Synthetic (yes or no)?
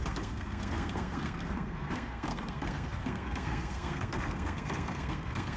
yes